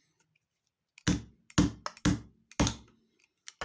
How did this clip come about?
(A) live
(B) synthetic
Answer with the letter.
A